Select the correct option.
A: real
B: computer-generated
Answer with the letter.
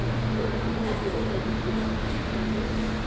A